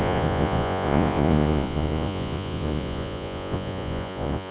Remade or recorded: remade